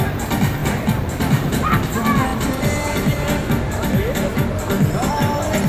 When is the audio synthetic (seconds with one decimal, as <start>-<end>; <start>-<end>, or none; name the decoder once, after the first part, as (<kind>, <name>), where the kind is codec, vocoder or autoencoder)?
0.6-1.7 (vocoder, BigVGAN v2)